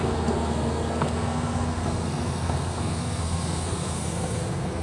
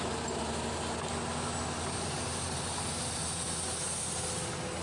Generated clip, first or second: first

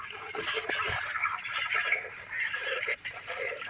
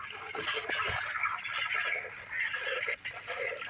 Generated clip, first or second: first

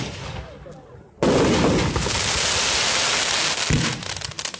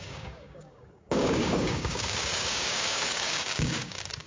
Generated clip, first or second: second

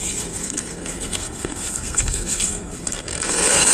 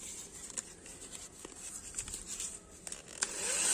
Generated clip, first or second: first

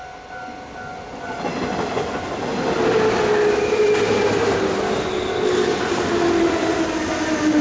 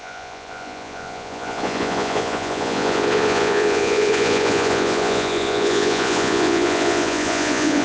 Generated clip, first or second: second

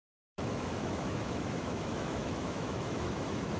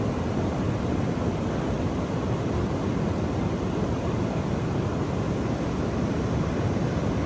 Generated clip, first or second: first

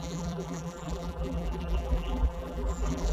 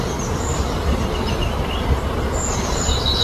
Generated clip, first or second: first